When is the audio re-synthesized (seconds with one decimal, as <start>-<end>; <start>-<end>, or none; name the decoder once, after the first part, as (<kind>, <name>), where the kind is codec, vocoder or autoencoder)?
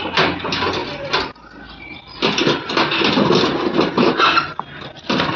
none